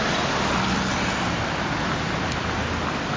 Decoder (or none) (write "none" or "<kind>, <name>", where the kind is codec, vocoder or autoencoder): none